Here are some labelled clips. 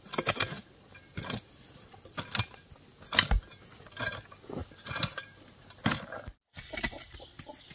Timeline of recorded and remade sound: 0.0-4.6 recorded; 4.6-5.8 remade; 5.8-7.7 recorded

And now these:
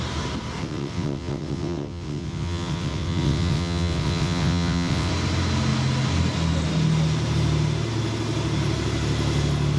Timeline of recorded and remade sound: 0.0-0.6 recorded; 0.6-5.1 remade; 5.1-9.8 recorded